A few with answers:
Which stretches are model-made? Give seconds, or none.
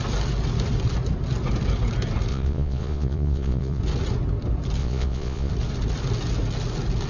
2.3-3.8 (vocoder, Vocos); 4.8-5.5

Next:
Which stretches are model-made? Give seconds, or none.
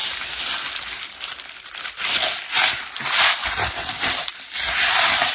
none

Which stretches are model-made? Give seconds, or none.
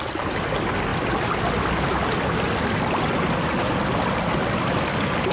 none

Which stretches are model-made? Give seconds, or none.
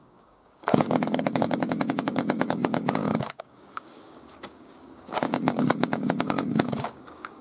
0.0-7.4 (codec, DAC)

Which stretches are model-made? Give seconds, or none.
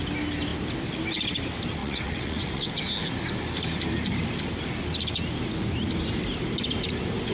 1.8-2.7 (vocoder, WaveNeXt)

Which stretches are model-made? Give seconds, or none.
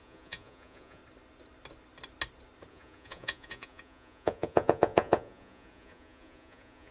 0.0-1.0 (vocoder, Vocos); 2.7-6.9